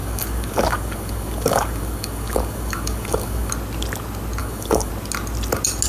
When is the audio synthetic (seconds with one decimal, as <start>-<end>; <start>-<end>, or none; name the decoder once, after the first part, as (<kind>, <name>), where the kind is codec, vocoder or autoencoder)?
0.0-3.5 (codec, DAC); 4.4-4.9